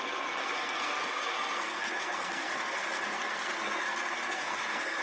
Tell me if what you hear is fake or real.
fake